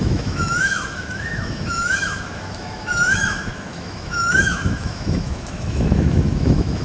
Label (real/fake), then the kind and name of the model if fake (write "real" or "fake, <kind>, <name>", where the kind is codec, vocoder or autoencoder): fake, autoencoder, DAC-VAE